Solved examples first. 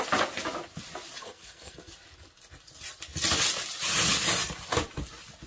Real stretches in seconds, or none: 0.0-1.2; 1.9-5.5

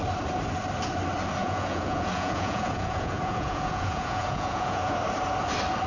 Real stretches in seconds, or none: 0.0-1.4; 4.9-5.9

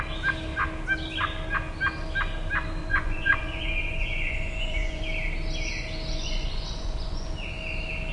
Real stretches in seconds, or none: 0.0-2.8; 5.0-6.1; 7.3-8.1

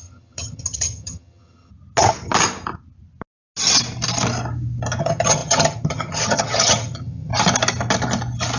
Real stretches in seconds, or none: 1.7-5.0; 7.3-8.6

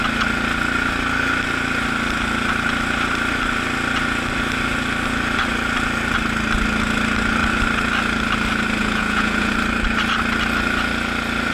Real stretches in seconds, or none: 0.0-8.8; 9.5-11.5

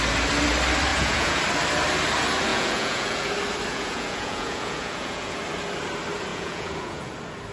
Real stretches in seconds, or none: 0.0-0.9; 1.4-2.5; 3.3-3.7; 5.4-6.3; 7.1-7.5